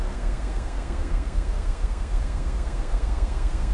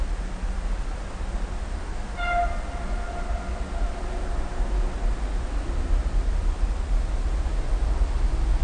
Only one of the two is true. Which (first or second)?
second